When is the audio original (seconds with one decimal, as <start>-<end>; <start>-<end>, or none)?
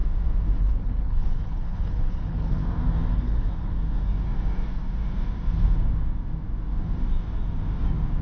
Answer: 0.0-0.6; 2.6-3.1; 3.7-8.2